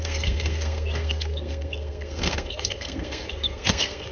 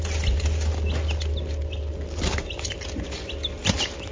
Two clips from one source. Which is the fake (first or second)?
first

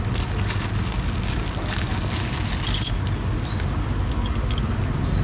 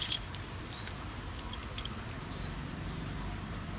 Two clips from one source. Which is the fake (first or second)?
second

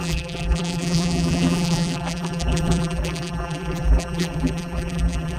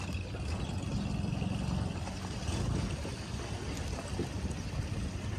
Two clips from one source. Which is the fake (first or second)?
first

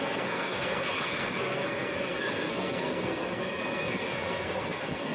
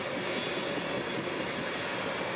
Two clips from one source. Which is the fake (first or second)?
first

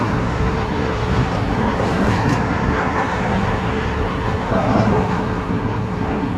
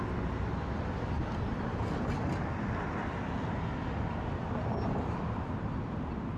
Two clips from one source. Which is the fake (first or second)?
first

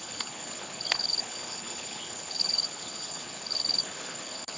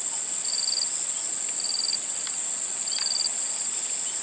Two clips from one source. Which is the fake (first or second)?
first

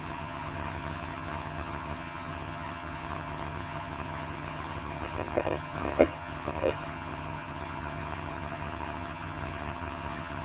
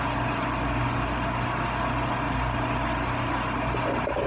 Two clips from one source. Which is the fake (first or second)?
first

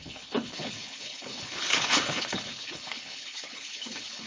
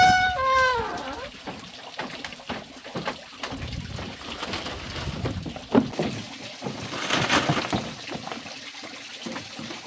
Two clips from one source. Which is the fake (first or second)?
first